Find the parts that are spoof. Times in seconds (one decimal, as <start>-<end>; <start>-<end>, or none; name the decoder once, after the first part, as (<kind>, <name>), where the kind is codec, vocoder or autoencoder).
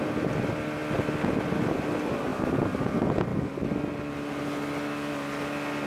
none